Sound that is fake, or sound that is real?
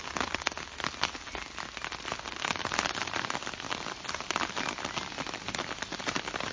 real